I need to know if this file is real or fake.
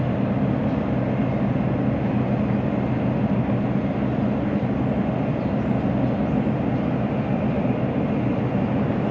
real